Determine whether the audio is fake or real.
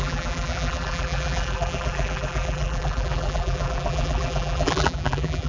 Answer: fake